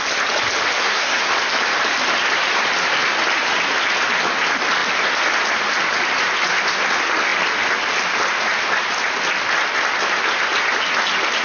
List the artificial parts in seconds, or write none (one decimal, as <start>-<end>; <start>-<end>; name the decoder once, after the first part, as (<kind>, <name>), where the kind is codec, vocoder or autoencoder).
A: 0.8-1.3 (codec, SNAC)